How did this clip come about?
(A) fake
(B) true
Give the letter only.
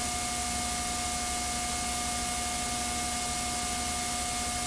B